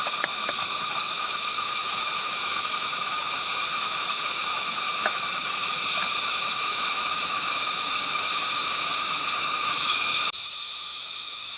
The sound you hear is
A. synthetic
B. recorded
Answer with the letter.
A